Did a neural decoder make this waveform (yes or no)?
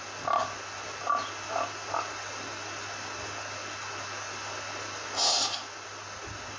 no